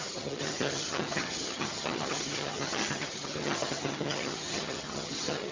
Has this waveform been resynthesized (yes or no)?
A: yes